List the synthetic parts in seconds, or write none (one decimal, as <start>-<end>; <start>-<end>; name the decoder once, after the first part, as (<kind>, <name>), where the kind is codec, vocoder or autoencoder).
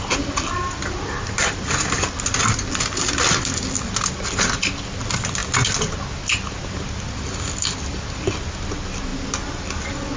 none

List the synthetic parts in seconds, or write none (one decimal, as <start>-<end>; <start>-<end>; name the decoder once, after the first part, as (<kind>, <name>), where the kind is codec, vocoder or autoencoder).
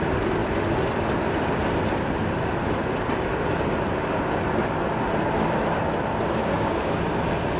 6.4-7.0 (codec, DAC)